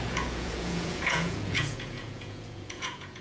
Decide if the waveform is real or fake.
fake